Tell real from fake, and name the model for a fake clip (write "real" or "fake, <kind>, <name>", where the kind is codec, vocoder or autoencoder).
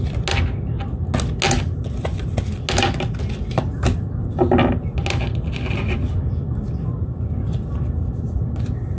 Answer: real